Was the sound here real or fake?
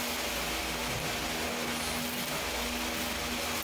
real